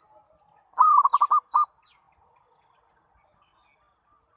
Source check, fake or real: real